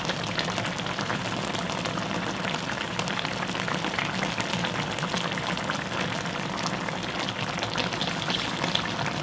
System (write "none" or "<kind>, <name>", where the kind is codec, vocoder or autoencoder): none